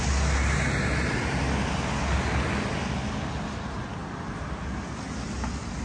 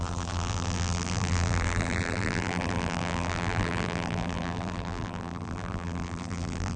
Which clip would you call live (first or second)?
first